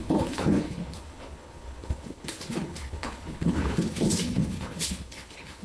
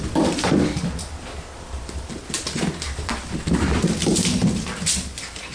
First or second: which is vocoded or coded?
first